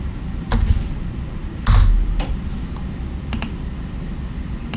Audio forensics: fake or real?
real